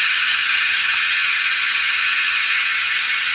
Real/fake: fake